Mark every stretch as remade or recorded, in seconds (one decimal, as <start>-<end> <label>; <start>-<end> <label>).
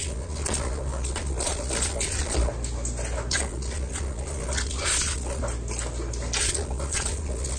0.0-2.5 remade; 2.5-3.3 recorded; 3.3-5.4 remade; 5.4-6.4 recorded; 6.4-7.6 remade